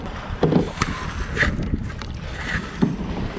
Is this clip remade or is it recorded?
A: remade